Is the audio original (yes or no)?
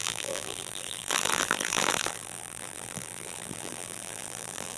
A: no